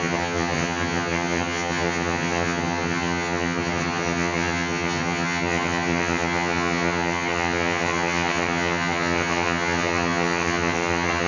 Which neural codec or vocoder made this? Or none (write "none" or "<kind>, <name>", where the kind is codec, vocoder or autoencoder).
vocoder, HiFi-GAN